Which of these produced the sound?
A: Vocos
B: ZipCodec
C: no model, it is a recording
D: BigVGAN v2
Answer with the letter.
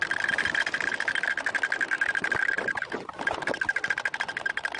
C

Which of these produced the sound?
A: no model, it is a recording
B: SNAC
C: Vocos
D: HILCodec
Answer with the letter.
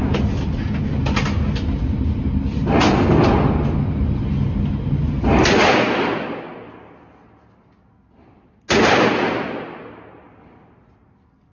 A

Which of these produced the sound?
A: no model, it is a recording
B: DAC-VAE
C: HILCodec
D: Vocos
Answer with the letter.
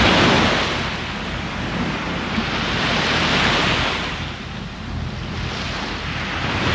A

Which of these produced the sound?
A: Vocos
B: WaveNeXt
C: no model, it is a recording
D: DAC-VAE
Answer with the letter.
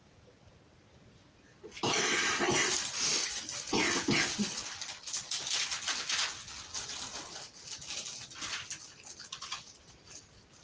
C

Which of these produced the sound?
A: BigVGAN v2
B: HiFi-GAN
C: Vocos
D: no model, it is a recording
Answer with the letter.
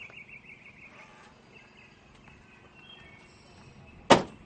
D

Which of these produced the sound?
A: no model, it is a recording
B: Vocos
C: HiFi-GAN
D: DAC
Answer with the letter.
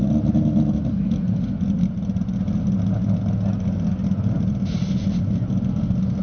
A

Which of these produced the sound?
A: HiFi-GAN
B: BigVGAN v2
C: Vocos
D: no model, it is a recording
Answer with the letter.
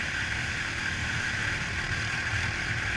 D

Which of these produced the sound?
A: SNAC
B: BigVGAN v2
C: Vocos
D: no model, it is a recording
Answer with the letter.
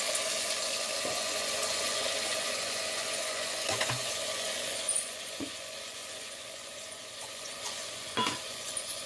C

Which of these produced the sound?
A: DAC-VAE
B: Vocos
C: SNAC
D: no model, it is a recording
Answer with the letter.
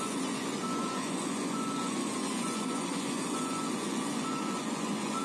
B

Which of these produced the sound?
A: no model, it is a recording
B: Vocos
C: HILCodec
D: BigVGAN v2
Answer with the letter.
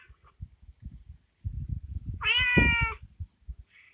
A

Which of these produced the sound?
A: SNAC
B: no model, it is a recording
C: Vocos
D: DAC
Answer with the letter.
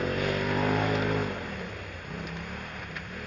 B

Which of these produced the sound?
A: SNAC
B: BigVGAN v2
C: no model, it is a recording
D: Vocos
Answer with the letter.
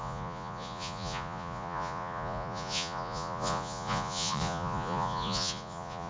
D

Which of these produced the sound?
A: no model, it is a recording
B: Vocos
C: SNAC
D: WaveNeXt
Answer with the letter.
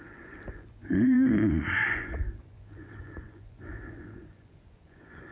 B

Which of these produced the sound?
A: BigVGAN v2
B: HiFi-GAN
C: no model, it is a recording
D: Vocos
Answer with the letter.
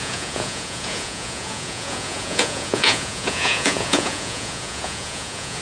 D